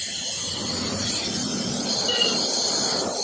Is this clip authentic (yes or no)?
yes